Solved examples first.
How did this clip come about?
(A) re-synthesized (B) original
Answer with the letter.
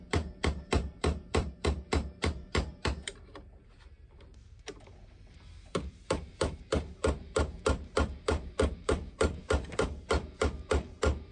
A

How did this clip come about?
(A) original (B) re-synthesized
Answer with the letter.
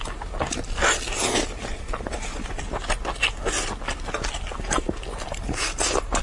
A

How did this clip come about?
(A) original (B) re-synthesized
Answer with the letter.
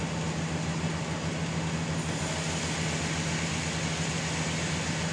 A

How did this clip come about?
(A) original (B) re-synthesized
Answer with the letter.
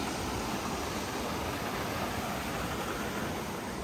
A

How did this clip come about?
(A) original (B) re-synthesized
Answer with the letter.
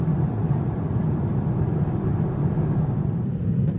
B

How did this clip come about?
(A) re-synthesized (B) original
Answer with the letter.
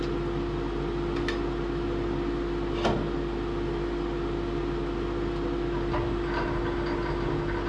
B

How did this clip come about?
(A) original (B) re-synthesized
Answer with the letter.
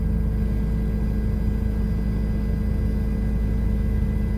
A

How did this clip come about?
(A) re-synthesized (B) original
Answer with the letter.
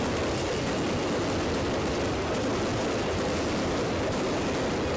B